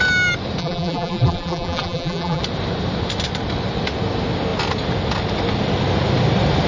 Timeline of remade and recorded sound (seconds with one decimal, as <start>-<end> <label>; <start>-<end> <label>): 0.0-0.6 recorded; 0.6-2.4 remade; 2.4-6.7 recorded